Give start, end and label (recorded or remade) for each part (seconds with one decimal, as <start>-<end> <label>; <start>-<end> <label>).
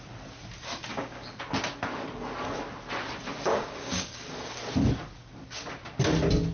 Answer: 0.0-0.9 recorded; 0.9-1.4 remade; 1.4-3.5 recorded; 3.5-4.5 remade; 4.5-6.5 recorded